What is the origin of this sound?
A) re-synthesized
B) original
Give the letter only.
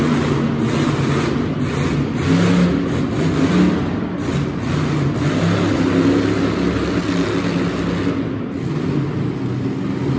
B